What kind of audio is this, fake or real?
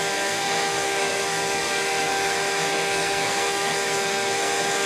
fake